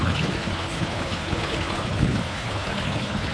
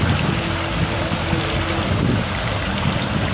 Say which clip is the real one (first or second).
second